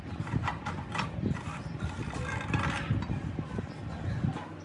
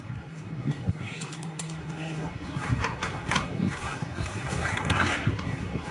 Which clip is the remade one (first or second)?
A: second